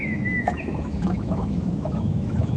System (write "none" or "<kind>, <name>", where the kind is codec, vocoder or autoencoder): autoencoder, DAC-VAE